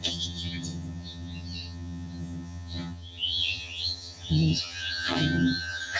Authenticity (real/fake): fake